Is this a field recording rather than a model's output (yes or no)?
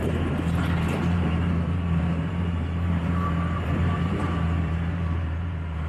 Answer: no